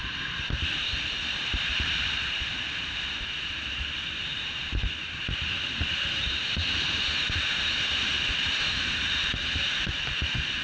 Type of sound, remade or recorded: remade